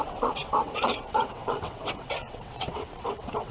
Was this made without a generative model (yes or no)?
no